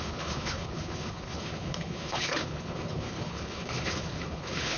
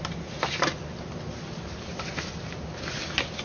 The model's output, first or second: first